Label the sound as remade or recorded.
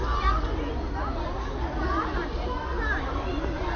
recorded